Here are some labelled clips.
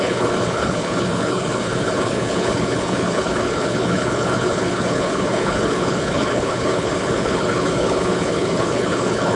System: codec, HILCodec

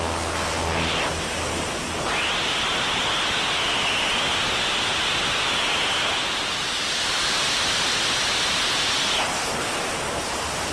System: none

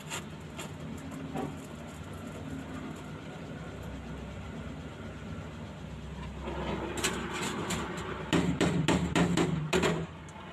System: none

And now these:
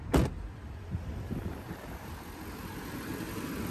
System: none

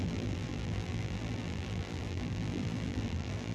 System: vocoder, BigVGAN v2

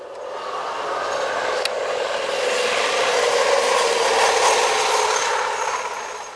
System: none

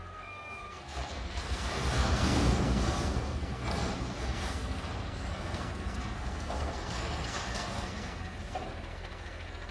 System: codec, SNAC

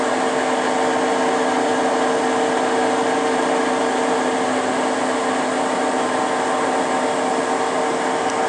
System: none